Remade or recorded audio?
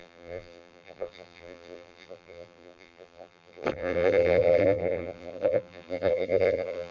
remade